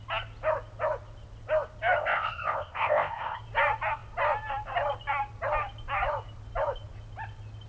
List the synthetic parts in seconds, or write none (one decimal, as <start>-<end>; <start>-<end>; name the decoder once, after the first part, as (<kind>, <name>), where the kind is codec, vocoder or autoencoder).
2.0-3.4 (codec, ZipCodec)